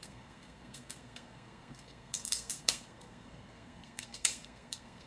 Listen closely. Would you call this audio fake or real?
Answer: fake